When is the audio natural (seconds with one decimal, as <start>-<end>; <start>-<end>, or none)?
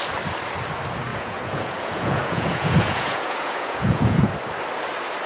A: 0.0-1.1; 4.3-5.3